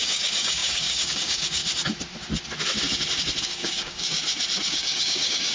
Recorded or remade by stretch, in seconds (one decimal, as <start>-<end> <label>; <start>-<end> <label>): 0.0-1.6 remade; 1.6-3.4 recorded; 3.4-4.2 remade; 4.2-4.7 recorded; 4.7-5.5 remade